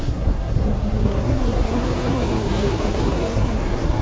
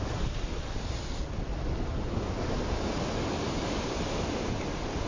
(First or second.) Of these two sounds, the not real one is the first